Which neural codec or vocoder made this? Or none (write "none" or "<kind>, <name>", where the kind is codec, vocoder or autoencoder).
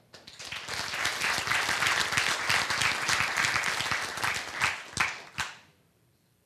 none